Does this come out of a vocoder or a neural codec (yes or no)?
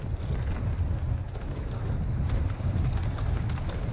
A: no